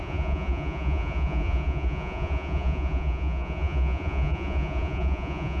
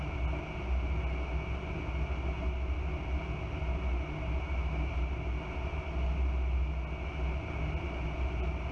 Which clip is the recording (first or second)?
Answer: second